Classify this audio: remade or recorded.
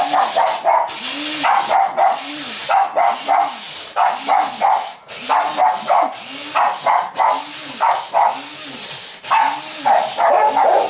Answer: recorded